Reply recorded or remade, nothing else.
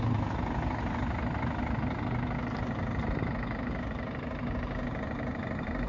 recorded